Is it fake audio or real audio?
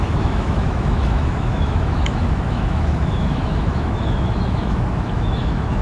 fake